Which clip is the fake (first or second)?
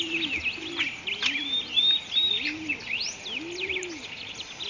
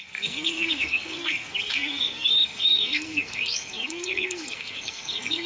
second